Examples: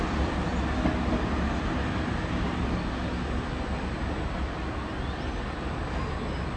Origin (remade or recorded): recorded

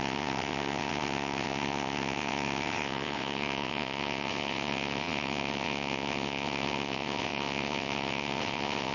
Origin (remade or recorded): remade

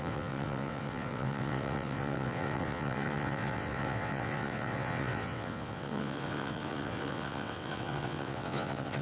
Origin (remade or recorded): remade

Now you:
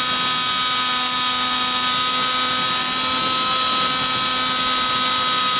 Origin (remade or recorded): recorded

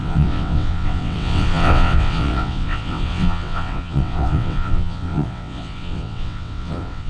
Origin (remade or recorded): remade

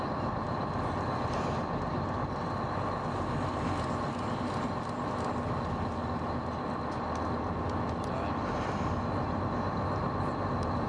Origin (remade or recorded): recorded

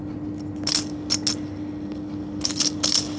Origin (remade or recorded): recorded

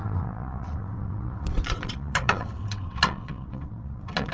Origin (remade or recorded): remade